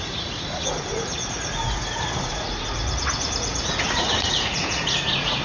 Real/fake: fake